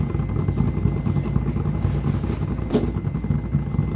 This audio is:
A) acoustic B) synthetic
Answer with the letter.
A